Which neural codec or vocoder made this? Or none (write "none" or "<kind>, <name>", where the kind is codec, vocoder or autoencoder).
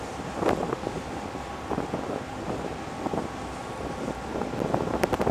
none